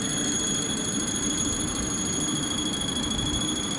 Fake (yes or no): yes